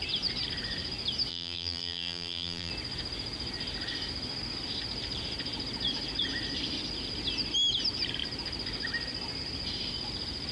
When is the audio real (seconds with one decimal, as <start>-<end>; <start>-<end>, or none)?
0.0-1.3; 2.7-10.5